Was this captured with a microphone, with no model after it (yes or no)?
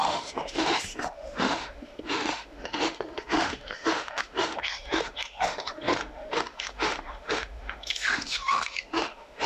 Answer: no